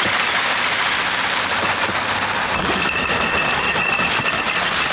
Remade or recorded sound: recorded